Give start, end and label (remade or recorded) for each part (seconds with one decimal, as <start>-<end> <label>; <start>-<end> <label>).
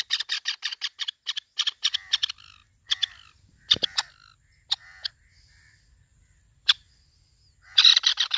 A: 0.0-6.1 recorded; 6.1-7.0 remade; 7.0-8.4 recorded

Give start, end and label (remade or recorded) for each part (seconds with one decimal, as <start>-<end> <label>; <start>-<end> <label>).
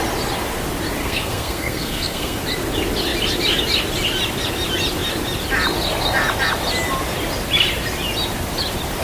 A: 0.0-1.0 recorded; 1.0-2.4 remade; 2.4-9.0 recorded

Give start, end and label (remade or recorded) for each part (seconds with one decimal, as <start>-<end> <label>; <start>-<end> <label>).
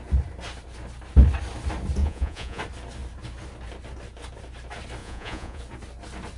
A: 0.0-2.0 recorded; 2.0-2.6 remade; 2.6-5.0 recorded; 5.0-5.6 remade; 5.6-6.4 recorded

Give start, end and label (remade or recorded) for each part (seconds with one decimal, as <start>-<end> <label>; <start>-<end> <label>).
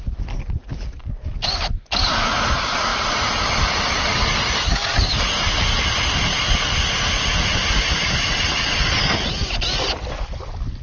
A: 0.0-10.8 recorded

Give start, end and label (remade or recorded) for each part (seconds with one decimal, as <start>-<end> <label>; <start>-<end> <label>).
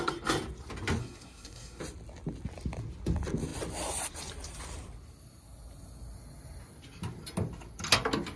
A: 0.0-1.0 recorded; 1.0-1.8 remade; 1.8-8.4 recorded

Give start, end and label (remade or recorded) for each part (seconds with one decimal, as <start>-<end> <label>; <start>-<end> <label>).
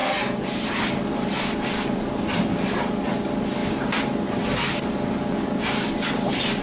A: 0.0-6.6 recorded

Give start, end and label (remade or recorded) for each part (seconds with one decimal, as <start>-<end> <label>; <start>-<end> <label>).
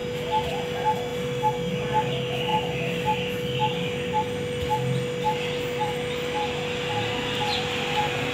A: 0.0-0.5 remade; 0.5-2.5 recorded; 2.5-7.1 remade; 7.1-8.3 recorded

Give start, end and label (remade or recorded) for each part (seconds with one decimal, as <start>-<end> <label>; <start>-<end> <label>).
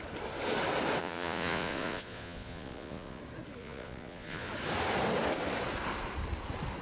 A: 0.0-1.0 recorded; 1.0-3.2 remade; 3.2-3.6 recorded; 3.6-4.5 remade; 4.5-6.8 recorded